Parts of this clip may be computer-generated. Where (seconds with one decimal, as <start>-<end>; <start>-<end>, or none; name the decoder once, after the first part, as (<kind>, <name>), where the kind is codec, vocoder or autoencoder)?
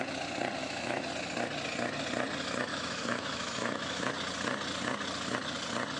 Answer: 0.6-1.1 (autoencoder, DAC-VAE); 2.7-4.1